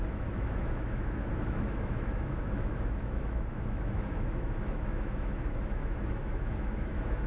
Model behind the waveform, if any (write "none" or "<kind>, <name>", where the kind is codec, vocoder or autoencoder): autoencoder, DAC-VAE